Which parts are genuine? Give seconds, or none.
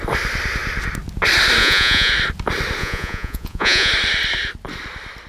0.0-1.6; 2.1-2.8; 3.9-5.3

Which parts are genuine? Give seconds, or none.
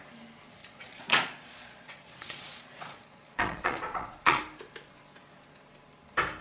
0.0-0.6; 4.4-6.4